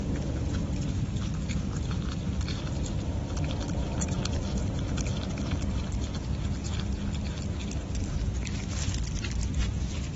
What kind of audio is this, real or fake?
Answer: real